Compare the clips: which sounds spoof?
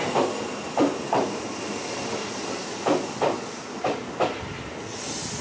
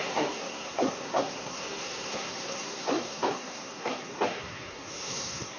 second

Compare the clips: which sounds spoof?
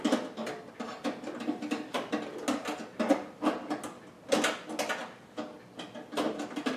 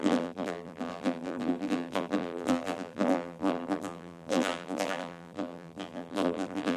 second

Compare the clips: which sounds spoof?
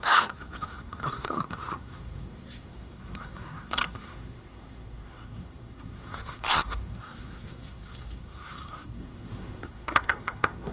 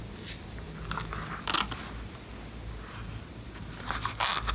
first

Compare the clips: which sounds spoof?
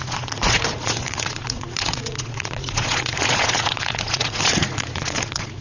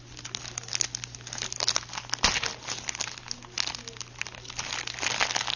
first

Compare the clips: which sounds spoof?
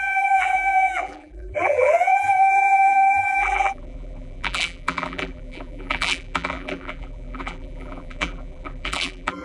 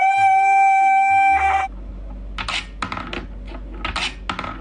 first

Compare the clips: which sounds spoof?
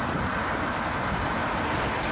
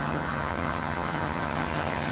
second